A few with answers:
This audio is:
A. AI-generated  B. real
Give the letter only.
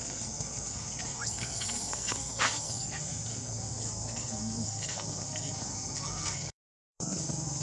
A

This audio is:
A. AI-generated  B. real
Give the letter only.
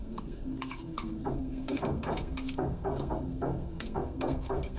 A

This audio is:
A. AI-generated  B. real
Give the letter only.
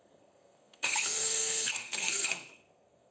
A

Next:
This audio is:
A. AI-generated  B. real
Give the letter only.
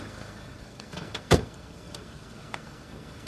A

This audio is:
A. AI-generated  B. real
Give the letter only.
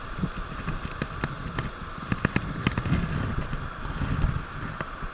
B